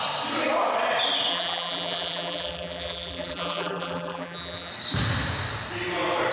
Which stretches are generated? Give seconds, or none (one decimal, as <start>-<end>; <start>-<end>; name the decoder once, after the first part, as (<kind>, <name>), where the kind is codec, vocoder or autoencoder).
1.3-4.7 (vocoder, BigVGAN v2)